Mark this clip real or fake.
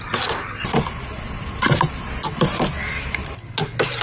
real